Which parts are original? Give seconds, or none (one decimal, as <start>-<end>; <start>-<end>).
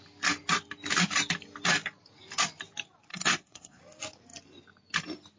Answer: 0.0-3.1; 3.8-5.4